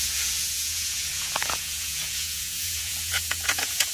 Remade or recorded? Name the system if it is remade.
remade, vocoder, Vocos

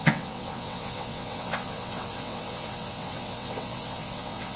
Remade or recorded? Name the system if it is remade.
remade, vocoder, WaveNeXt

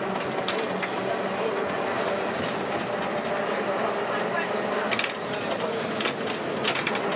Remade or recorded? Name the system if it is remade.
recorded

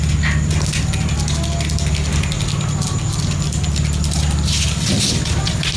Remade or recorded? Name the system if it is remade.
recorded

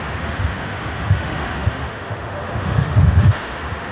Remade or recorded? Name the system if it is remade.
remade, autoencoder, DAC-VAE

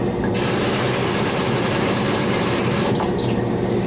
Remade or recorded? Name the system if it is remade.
remade, vocoder, BigVGAN v2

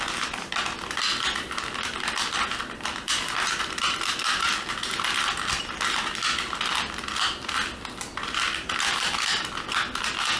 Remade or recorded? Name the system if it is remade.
recorded